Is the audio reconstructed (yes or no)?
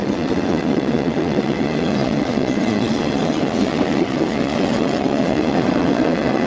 yes